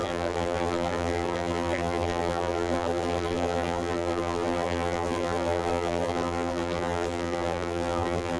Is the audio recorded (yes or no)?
no